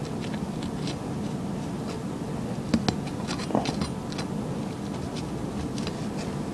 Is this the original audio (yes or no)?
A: yes